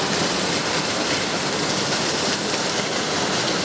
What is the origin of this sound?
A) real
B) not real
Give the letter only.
A